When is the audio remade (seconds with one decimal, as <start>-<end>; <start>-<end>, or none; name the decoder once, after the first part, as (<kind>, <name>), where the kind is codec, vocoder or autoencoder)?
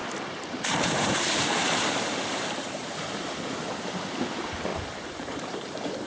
0.0-3.3 (vocoder, BigVGAN v2); 4.7-6.1